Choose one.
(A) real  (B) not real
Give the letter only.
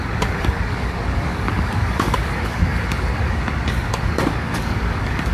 B